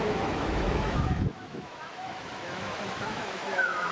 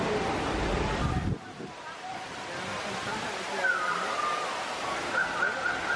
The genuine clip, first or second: second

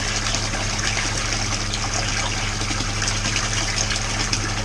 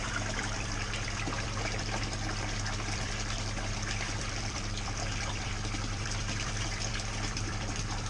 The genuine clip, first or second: first